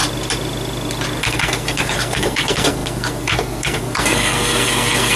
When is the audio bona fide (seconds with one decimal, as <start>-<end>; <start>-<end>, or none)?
0.0-1.2